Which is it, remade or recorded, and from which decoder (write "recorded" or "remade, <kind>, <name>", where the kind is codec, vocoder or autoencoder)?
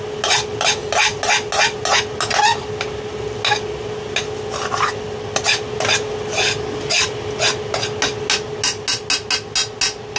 recorded